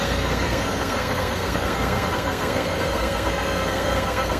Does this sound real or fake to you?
fake